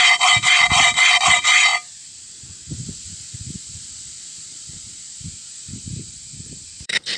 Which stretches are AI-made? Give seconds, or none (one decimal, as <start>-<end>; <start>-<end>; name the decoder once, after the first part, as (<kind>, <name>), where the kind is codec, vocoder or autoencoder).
5.9-7.2 (vocoder, BigVGAN v2)